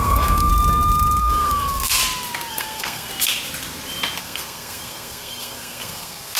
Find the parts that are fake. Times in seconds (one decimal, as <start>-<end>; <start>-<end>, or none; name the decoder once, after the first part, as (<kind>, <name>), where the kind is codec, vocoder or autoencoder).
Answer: 0.0-0.5 (codec, SNAC); 1.2-2.0; 2.5-3.1; 4.2-6.4